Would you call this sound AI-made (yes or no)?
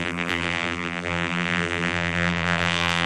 yes